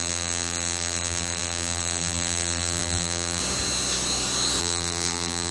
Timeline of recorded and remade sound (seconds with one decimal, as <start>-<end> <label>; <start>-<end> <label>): 0.0-3.4 remade; 3.4-4.6 recorded; 4.6-5.5 remade